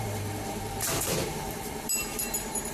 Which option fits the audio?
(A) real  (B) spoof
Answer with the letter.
B